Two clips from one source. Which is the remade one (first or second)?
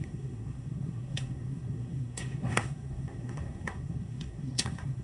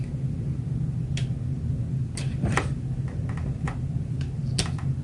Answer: first